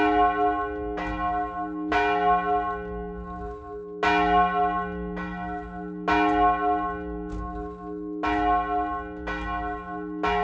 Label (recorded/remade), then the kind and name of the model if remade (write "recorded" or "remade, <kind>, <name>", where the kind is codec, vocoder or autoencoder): recorded